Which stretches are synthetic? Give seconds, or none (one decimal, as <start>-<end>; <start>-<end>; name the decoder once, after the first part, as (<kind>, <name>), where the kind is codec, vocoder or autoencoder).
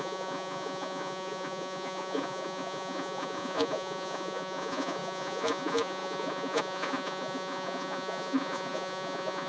0.0-9.5 (vocoder, Vocos)